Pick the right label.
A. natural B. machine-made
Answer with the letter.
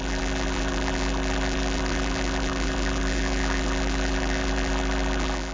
B